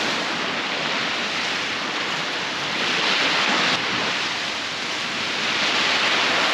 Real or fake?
real